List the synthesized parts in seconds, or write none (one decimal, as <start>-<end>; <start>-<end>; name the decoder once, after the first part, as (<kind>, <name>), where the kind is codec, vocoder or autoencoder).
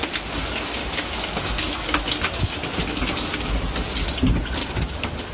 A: 0.8-3.0 (codec, DAC); 4.6-5.3